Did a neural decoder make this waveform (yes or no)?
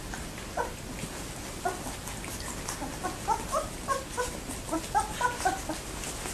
no